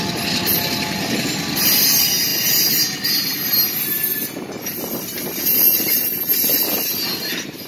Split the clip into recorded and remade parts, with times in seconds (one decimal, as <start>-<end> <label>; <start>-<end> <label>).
0.0-7.7 recorded